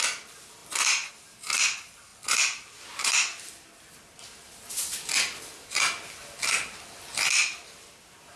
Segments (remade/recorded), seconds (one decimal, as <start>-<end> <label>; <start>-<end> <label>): 0.0-8.4 recorded